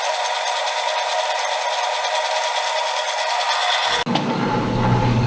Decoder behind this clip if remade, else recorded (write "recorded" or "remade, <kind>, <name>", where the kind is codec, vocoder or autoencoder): recorded